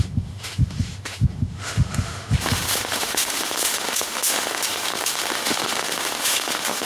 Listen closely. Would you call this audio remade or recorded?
remade